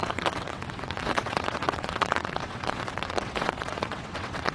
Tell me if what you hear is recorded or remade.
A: remade